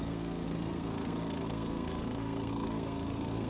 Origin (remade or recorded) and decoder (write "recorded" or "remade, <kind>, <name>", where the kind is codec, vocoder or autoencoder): remade, codec, SNAC